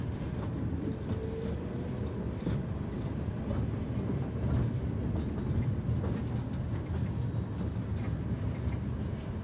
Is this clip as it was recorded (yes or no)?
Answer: yes